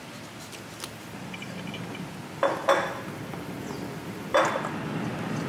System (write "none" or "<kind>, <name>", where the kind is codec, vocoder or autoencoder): none